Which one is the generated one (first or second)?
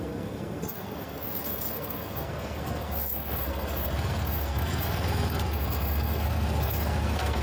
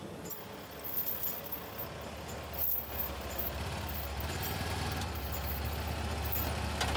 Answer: first